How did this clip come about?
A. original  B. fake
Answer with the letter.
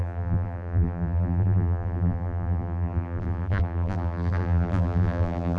B